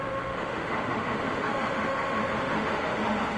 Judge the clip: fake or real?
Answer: fake